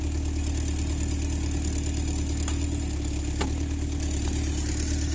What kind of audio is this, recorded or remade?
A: recorded